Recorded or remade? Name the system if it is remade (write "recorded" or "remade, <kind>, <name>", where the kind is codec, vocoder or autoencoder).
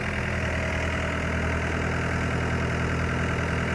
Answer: recorded